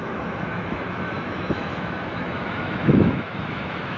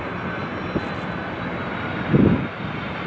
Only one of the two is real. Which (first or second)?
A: second